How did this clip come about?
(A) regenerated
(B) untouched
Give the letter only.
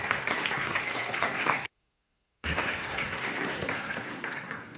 A